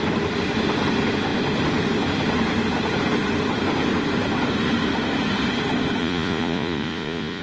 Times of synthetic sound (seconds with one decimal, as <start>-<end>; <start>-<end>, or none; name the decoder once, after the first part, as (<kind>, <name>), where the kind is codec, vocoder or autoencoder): 6.0-7.4 (vocoder, Vocos)